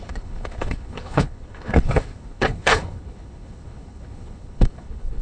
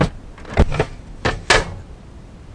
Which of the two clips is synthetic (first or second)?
first